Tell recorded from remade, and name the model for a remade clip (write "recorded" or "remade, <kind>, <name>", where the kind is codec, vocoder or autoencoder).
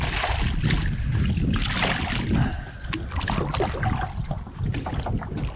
recorded